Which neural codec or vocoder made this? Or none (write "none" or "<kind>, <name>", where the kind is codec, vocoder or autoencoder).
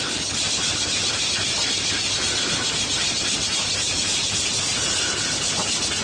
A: none